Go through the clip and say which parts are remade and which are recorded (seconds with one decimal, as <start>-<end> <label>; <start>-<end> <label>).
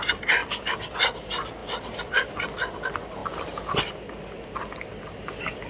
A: 0.0-0.4 recorded; 0.4-1.2 remade; 1.2-1.6 recorded; 1.6-2.1 remade; 2.1-5.7 recorded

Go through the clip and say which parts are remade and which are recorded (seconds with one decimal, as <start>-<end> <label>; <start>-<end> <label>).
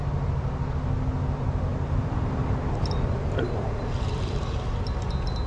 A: 0.0-1.7 recorded; 1.7-4.7 remade; 4.7-5.5 recorded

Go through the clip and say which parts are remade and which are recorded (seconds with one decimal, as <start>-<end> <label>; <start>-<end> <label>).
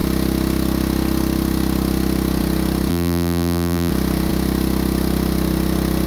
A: 0.0-2.9 recorded; 2.9-3.9 remade; 3.9-6.1 recorded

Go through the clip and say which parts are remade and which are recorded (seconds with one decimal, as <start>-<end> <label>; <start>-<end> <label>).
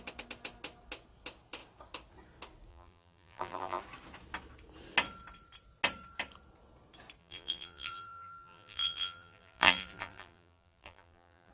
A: 0.0-2.7 recorded; 2.7-3.8 remade; 3.8-7.2 recorded; 7.2-11.5 remade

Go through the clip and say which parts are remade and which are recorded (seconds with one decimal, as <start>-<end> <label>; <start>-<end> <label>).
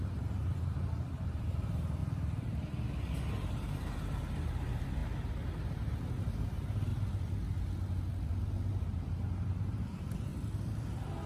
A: 0.0-2.0 remade; 2.0-3.5 recorded; 3.5-5.0 remade; 5.0-6.3 recorded; 6.3-6.9 remade; 6.9-8.8 recorded; 8.8-10.3 remade; 10.3-10.8 recorded; 10.8-11.3 remade